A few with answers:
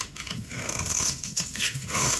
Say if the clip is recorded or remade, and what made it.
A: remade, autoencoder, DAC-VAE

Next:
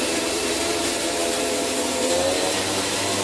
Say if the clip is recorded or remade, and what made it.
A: remade, vocoder, BigVGAN v2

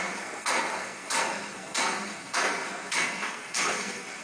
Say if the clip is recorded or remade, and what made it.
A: remade, codec, SNAC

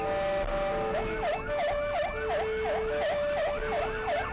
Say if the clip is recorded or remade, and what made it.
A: recorded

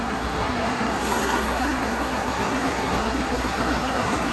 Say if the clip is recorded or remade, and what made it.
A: remade, codec, SNAC